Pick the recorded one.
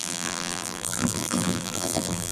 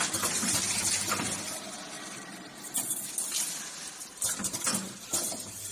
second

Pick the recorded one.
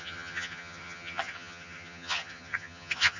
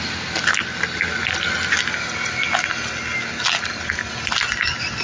second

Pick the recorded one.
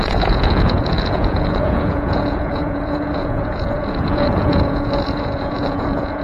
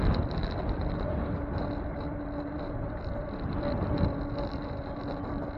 second